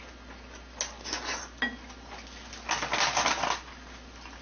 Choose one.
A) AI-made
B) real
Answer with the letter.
B